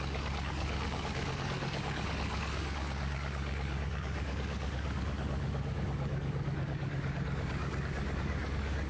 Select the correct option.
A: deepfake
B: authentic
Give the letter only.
A